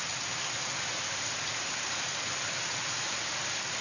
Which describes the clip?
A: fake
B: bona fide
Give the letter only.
B